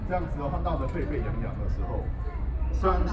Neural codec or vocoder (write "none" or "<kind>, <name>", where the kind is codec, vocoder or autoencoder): none